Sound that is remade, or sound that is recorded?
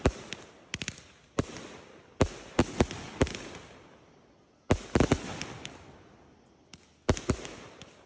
recorded